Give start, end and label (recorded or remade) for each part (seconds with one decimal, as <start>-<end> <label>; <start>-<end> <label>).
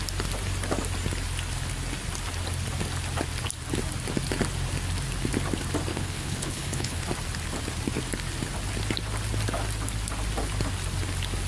0.0-5.9 recorded; 5.9-7.0 remade; 7.0-11.5 recorded